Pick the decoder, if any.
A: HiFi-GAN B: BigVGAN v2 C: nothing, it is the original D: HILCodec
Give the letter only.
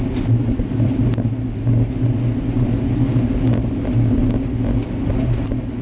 C